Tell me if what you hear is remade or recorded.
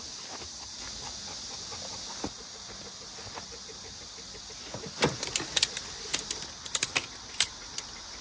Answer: recorded